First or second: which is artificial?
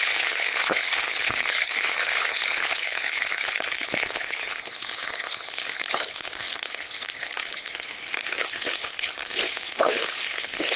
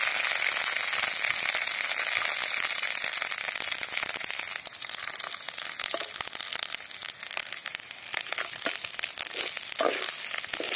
first